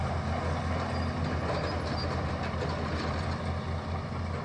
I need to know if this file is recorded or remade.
recorded